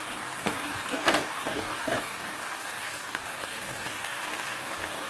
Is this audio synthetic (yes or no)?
yes